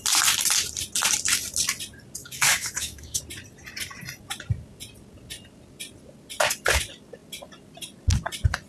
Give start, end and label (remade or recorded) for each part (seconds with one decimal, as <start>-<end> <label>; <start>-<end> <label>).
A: 0.0-2.2 recorded; 2.2-3.2 remade; 3.2-8.7 recorded